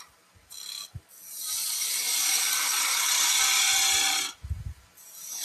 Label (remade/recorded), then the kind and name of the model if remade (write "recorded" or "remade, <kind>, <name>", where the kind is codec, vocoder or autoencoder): recorded